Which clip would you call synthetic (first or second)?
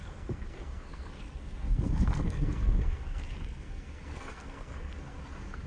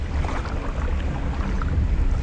first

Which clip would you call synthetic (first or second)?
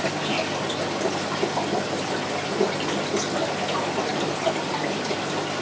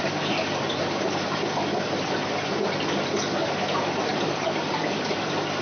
second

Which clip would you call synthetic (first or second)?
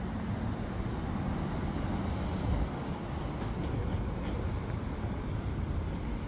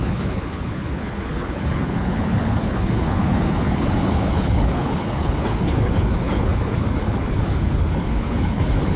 second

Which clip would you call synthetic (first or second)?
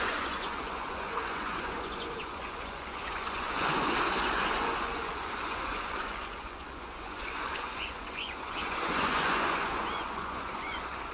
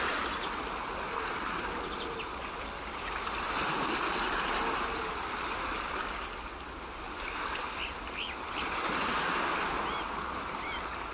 first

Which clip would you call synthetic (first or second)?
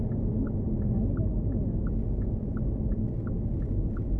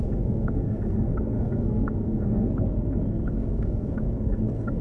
second